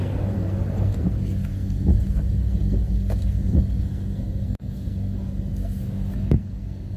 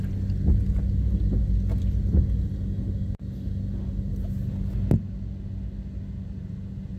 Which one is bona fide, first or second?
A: second